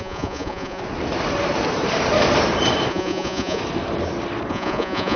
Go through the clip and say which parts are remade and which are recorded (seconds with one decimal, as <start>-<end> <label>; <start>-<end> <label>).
0.0-0.8 remade; 0.8-2.9 recorded; 2.9-3.6 remade; 3.6-4.5 recorded; 4.5-5.2 remade